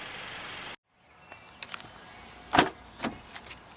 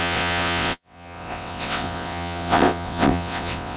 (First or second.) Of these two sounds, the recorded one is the first